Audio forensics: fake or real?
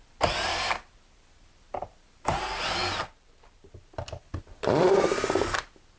fake